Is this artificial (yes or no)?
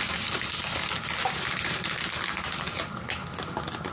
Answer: no